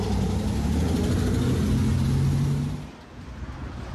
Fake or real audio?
real